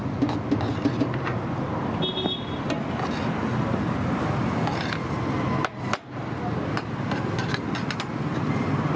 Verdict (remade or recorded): recorded